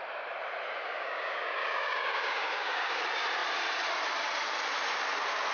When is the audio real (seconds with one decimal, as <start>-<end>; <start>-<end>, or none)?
0.0-0.8; 3.0-5.5